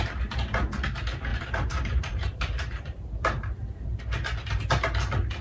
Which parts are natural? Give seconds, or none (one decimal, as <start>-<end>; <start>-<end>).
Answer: 0.0-1.3; 4.0-5.4